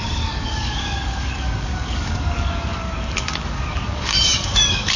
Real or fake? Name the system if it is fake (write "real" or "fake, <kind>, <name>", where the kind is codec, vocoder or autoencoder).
fake, codec, DAC